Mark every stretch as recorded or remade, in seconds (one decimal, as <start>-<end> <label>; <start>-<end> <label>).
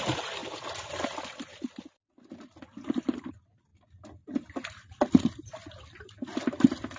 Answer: 0.0-7.0 recorded